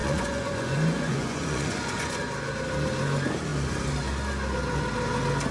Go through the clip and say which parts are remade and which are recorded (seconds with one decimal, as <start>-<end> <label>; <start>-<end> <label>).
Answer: 0.0-2.2 remade; 2.2-5.5 recorded

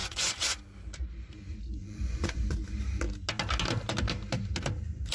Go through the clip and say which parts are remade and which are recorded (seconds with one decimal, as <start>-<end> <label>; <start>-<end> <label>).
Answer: 0.0-0.6 remade; 0.6-1.8 recorded; 1.8-2.4 remade; 2.4-5.1 recorded

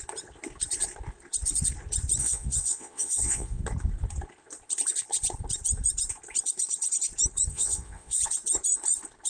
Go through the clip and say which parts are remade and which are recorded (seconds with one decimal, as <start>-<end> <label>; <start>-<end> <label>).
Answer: 0.0-2.2 recorded; 2.2-3.6 remade; 3.6-7.5 recorded; 7.5-8.2 remade; 8.2-9.3 recorded

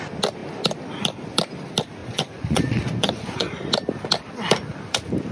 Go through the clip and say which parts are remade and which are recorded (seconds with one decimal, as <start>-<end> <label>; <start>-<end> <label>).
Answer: 0.0-2.0 recorded; 2.0-3.5 remade; 3.5-5.3 recorded

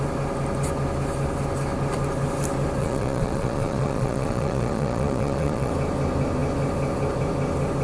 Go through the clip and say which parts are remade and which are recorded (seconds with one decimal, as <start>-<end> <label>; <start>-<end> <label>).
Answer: 0.0-2.8 recorded; 2.8-5.7 remade; 5.7-7.8 recorded